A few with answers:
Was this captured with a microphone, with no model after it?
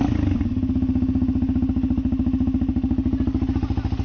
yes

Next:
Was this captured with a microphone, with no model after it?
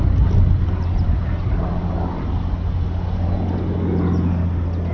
yes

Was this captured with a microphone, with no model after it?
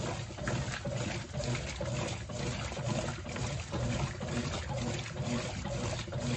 yes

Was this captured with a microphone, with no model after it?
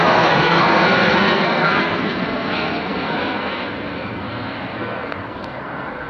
no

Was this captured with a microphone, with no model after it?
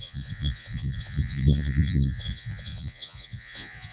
no